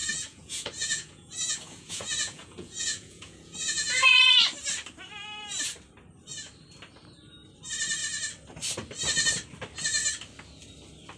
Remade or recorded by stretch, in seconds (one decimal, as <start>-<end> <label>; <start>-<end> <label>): 0.0-4.2 remade; 4.2-11.2 recorded